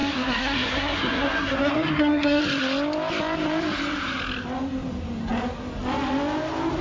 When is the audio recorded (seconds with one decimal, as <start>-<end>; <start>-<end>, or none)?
2.4-6.8